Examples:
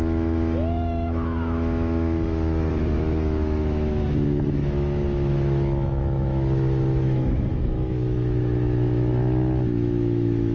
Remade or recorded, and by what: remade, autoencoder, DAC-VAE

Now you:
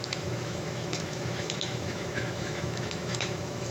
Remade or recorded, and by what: remade, autoencoder, DAC-VAE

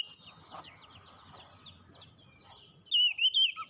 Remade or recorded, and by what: recorded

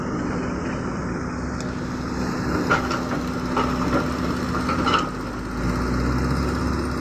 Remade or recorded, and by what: recorded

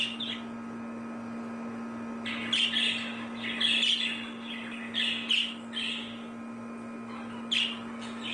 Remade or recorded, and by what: recorded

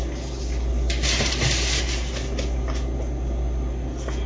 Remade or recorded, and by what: recorded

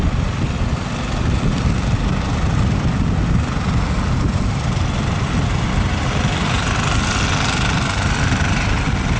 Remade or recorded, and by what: recorded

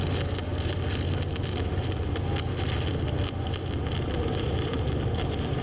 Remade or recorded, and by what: recorded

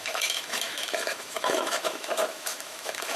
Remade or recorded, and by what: remade, autoencoder, DAC-VAE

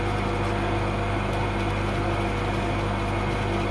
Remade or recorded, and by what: recorded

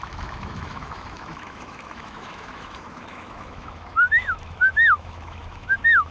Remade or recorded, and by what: remade, autoencoder, DAC-VAE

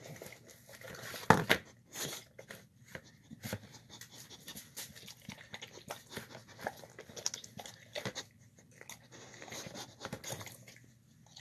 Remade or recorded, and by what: recorded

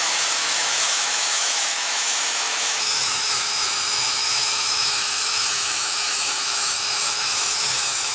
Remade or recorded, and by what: remade, autoencoder, DAC-VAE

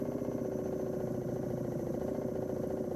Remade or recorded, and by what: recorded